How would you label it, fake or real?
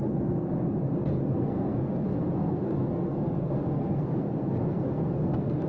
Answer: fake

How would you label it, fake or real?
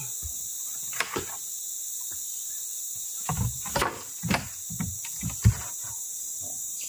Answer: real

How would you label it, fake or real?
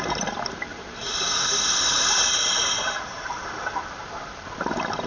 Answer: real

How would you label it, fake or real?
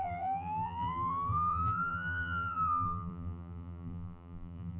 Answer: fake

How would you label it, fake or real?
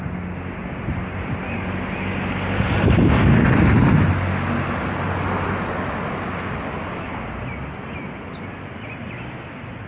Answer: real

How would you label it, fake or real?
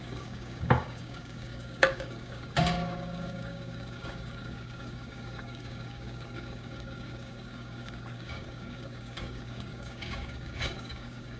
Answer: fake